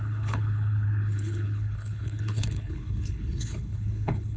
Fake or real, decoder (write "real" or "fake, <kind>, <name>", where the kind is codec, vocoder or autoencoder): fake, codec, HILCodec